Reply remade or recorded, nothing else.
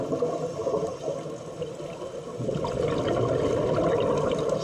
recorded